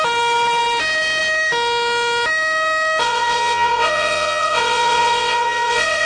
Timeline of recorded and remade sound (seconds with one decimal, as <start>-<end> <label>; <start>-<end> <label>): 0.0-3.0 recorded; 3.0-6.1 remade